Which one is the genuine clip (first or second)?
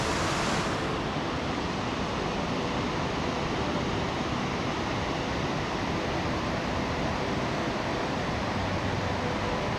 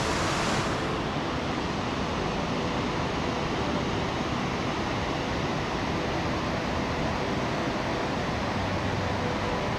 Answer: second